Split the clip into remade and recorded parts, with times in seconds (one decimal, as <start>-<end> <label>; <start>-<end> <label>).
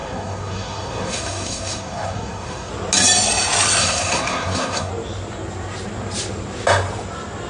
0.0-2.7 remade; 2.7-3.8 recorded; 3.8-4.9 remade; 4.9-7.5 recorded